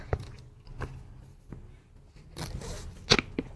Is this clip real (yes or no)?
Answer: yes